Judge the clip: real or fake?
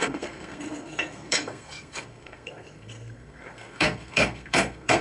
fake